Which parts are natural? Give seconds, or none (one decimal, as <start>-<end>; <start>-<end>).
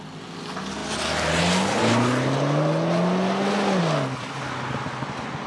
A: 0.0-5.5